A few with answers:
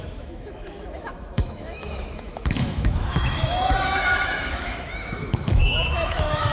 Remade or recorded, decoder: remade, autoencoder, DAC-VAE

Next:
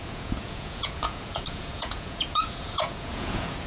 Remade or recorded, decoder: remade, vocoder, Vocos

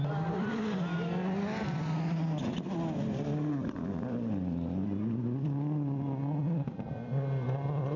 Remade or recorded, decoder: recorded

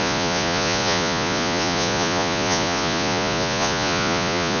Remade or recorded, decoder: remade, vocoder, Vocos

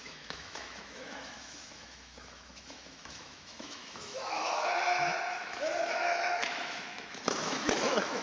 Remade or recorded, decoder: remade, autoencoder, DAC-VAE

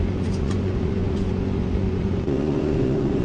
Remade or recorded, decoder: remade, vocoder, Vocos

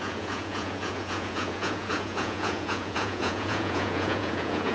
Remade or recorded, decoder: remade, vocoder, Vocos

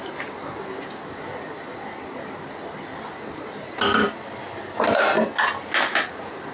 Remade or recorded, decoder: recorded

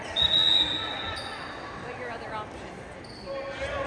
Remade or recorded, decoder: recorded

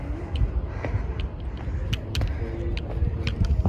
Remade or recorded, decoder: recorded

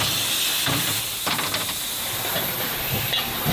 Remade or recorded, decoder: recorded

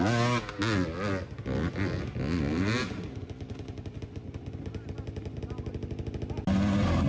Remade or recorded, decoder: recorded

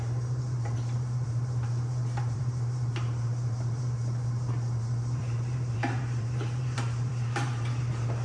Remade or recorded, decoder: remade, vocoder, BigVGAN v2